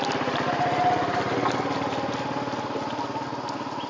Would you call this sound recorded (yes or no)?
yes